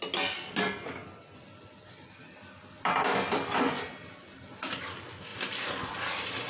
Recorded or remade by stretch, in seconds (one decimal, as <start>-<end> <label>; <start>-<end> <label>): 0.0-6.5 recorded